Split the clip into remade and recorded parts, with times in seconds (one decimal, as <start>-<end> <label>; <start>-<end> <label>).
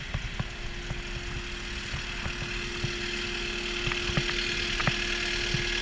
0.0-5.8 recorded